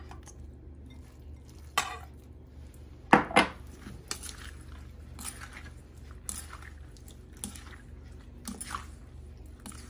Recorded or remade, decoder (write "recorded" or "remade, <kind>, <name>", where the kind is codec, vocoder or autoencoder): recorded